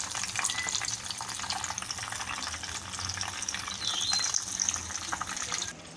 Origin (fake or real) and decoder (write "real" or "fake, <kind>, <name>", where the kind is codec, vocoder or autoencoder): real